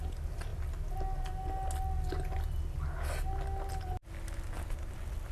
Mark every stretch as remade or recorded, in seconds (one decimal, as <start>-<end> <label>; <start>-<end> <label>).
0.0-5.3 recorded